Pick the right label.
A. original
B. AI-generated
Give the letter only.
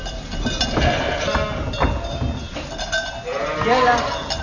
A